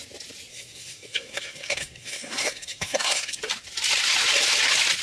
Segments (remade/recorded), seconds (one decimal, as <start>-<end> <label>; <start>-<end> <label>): 0.0-0.5 recorded; 0.5-3.5 remade; 3.5-5.0 recorded